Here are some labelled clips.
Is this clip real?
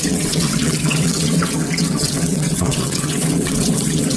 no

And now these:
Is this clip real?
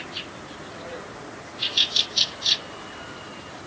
yes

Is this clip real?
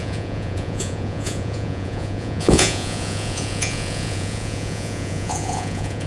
no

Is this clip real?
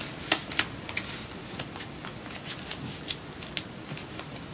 yes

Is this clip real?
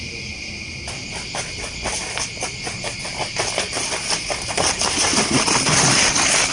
yes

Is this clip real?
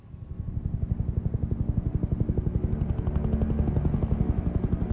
yes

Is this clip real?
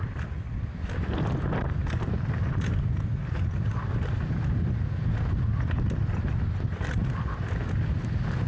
yes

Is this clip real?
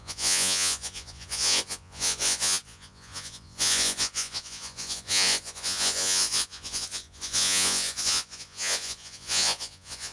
no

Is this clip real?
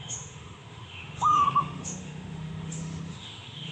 no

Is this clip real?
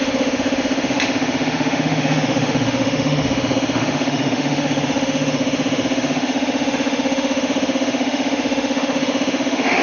no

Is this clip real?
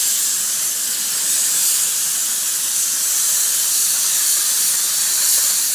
yes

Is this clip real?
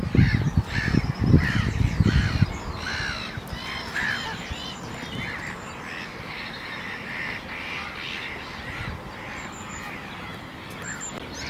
yes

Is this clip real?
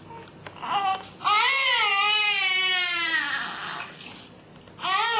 yes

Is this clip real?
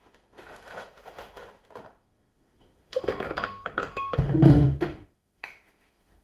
no